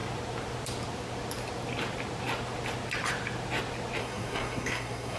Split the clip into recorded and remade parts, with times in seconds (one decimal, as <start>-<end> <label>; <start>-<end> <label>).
0.0-4.0 recorded; 4.0-5.2 remade

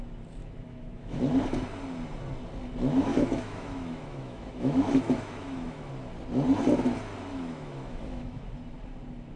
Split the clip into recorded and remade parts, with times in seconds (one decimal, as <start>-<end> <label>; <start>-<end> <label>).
0.0-0.4 recorded; 0.4-1.2 remade; 1.2-3.1 recorded; 3.1-5.9 remade; 5.9-7.3 recorded; 7.3-8.5 remade; 8.5-9.4 recorded

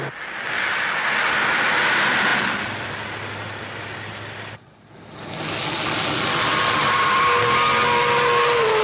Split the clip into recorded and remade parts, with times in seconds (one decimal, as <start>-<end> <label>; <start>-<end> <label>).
0.0-8.8 recorded

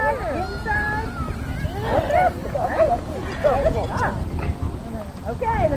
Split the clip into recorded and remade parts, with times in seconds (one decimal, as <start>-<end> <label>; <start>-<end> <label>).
0.0-2.4 recorded; 2.4-4.1 remade; 4.1-5.8 recorded